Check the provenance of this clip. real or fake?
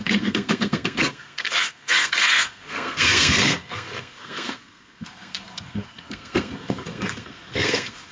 fake